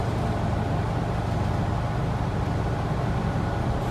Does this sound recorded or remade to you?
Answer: recorded